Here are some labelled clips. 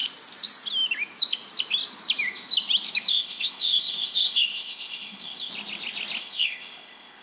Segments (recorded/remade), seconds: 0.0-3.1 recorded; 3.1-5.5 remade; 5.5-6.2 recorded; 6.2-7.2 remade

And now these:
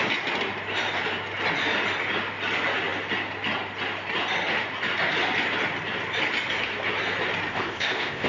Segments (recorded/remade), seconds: 0.0-7.5 recorded; 7.5-8.3 remade

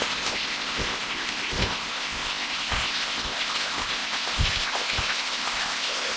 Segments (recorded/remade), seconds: 0.0-6.2 remade

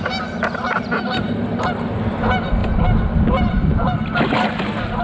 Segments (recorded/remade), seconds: 0.0-5.0 recorded

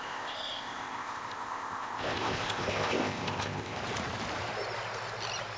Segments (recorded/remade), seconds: 0.0-3.8 remade; 3.8-5.6 recorded

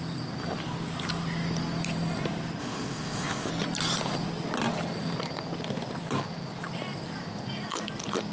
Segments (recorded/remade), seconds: 0.0-2.6 recorded; 2.6-3.5 remade; 3.5-8.3 recorded